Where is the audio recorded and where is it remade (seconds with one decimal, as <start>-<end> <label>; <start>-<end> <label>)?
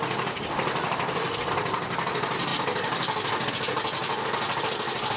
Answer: 0.0-5.2 recorded